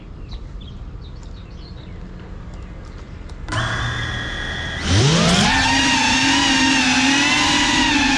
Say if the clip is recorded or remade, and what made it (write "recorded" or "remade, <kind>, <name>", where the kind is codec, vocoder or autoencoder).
recorded